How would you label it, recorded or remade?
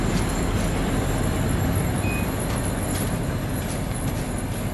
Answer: recorded